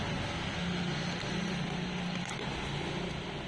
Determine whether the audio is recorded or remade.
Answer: recorded